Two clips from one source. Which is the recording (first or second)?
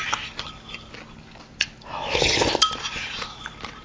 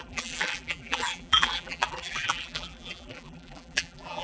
first